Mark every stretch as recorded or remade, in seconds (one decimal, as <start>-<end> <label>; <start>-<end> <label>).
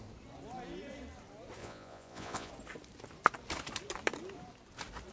0.0-1.6 recorded; 1.6-2.5 remade; 2.5-5.1 recorded